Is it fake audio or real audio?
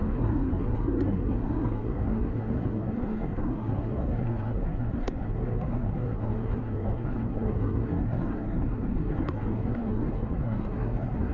fake